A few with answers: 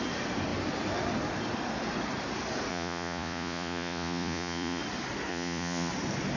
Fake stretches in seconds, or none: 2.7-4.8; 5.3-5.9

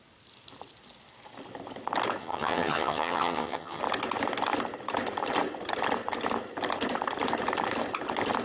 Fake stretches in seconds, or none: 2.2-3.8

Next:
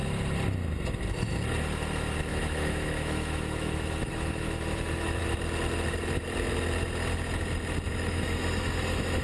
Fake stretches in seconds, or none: 2.2-5.2; 7.9-9.2

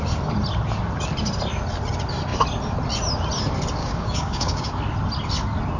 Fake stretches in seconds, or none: 3.8-4.7

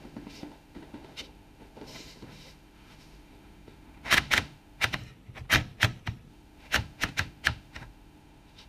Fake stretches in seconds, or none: 0.0-5.0; 6.3-8.7

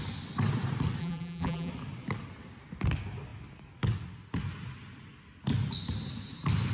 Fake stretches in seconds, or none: 1.0-1.7